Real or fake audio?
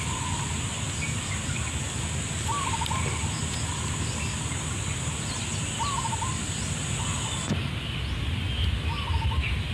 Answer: real